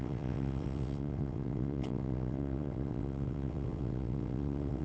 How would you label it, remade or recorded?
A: remade